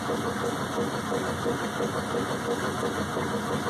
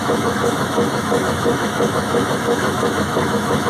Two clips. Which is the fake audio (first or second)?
second